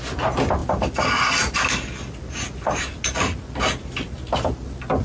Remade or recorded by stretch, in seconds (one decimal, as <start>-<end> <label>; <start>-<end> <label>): 0.0-5.0 recorded